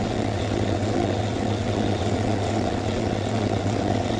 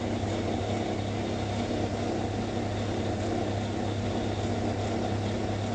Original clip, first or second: second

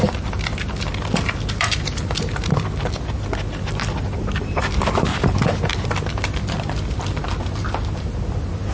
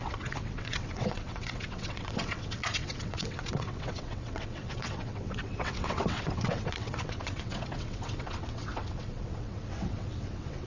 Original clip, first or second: first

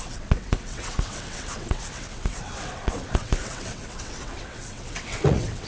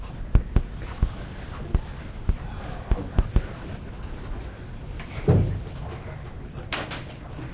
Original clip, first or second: second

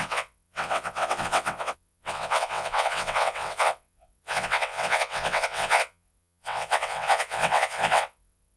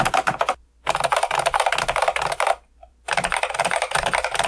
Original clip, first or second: second